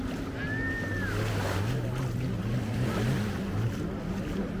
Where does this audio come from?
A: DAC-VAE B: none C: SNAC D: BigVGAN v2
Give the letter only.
B